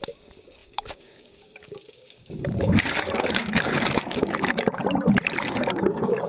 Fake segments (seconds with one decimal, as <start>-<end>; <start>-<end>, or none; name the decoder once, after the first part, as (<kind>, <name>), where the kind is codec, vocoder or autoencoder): 0.0-4.8 (codec, DAC); 5.4-6.3

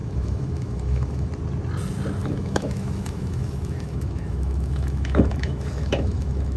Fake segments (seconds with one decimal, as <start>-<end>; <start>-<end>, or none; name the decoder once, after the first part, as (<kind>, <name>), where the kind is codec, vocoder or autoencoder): 0.0-1.3 (autoencoder, DAC-VAE); 2.2-6.6

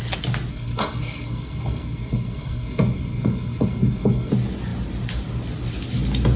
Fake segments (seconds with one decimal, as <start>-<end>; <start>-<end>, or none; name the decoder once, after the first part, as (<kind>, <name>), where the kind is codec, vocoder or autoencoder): 0.5-4.3 (codec, SNAC)

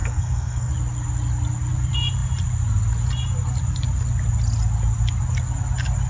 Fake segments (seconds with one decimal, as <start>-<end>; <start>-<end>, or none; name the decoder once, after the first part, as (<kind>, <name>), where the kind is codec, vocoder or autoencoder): 0.0-0.7 (codec, SNAC)

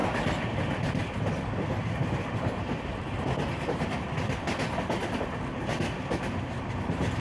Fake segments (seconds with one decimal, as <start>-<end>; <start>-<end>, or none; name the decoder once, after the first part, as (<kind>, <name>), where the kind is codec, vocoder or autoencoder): 1.3-7.2 (vocoder, BigVGAN v2)

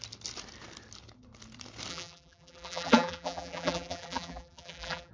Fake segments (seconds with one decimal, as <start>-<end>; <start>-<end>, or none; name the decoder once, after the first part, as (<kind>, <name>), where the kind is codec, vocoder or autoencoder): 1.9-5.1 (vocoder, BigVGAN v2)

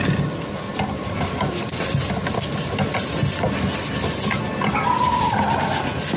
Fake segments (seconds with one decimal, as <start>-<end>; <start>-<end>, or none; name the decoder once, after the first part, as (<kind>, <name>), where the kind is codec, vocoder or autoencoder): none